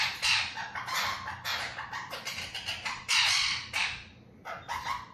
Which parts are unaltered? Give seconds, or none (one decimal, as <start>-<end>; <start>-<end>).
0.0-5.1